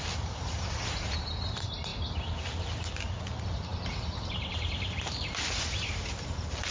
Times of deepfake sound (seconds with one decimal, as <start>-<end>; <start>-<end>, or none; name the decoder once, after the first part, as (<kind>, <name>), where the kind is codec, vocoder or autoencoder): 0.0-1.9 (vocoder, BigVGAN v2); 3.2-6.7

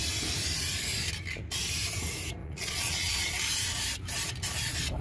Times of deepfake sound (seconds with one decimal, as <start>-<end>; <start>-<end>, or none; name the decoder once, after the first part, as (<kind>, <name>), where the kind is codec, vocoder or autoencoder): 2.4-3.3 (vocoder, Vocos)

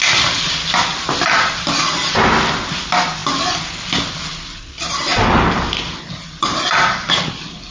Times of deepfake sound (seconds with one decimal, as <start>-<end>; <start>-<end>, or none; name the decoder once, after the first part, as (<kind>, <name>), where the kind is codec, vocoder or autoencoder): none

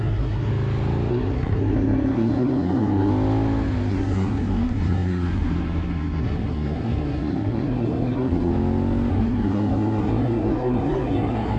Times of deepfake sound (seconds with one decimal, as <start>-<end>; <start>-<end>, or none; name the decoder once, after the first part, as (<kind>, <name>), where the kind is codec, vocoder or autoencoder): 0.0-0.5 (codec, SNAC); 1.1-3.1; 3.9-8.5; 9.1-11.6

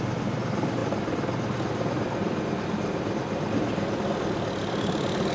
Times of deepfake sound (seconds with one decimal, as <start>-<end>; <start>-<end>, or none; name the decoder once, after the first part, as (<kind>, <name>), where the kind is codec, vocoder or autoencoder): none

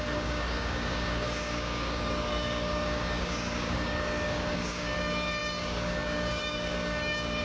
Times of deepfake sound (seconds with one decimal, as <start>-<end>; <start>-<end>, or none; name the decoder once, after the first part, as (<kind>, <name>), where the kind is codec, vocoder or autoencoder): 0.0-7.4 (codec, DAC)

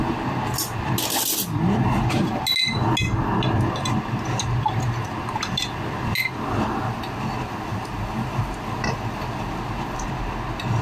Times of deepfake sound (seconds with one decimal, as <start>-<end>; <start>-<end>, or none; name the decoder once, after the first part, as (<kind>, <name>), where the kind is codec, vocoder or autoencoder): none